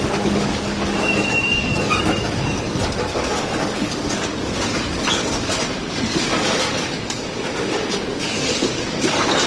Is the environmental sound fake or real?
fake